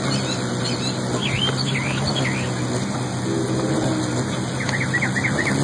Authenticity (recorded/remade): recorded